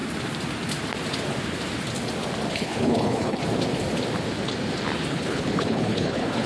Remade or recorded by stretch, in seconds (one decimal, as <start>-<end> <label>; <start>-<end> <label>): 0.0-2.5 recorded; 2.5-3.4 remade; 3.4-5.1 recorded; 5.1-6.5 remade